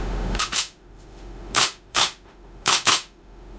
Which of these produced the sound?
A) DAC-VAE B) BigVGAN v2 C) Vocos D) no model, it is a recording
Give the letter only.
A